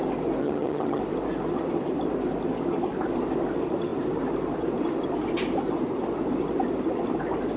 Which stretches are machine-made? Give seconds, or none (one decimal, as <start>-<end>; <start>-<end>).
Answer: 0.4-1.0